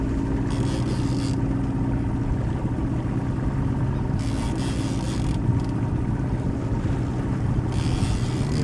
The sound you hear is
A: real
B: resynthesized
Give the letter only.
A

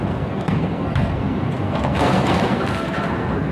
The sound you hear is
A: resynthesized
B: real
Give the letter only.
A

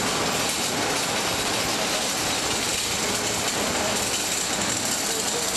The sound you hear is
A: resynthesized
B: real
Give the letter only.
B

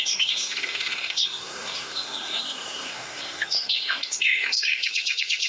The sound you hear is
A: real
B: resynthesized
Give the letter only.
B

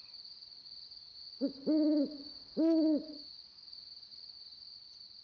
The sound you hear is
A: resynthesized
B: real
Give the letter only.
B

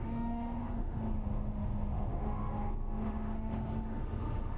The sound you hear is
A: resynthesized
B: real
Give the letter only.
A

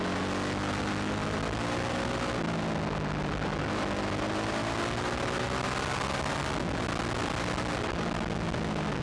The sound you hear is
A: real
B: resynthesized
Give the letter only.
A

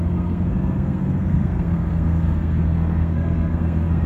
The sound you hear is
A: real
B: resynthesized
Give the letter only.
B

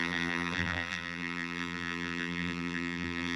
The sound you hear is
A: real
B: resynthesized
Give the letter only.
B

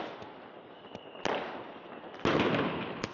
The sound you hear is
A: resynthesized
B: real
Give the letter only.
B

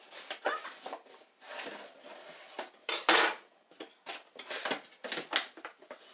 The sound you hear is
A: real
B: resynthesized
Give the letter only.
A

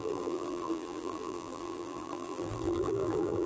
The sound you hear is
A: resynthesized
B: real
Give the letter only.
A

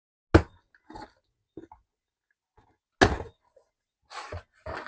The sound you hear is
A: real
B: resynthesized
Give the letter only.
A